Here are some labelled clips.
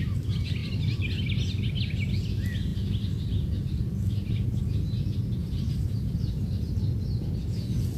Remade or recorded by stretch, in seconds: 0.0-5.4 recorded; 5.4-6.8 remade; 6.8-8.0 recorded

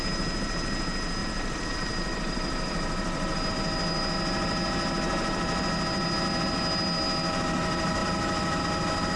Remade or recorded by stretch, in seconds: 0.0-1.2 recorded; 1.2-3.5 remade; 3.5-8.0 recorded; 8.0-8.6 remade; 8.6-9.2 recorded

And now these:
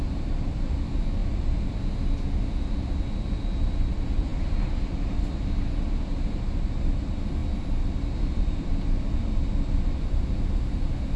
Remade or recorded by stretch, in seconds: 0.0-11.2 recorded

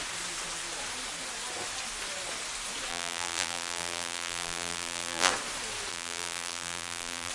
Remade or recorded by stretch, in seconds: 0.0-2.9 recorded; 2.9-5.3 remade; 5.3-5.9 recorded; 5.9-7.3 remade

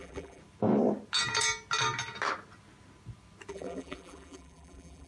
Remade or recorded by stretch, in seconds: 0.0-0.4 remade; 0.4-3.5 recorded; 3.5-5.1 remade

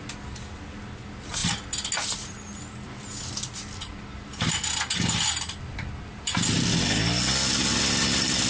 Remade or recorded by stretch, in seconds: 0.0-8.5 recorded

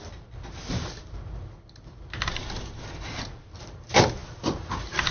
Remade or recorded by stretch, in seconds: 0.0-5.1 recorded